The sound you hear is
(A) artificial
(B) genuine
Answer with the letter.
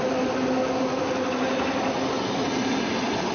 B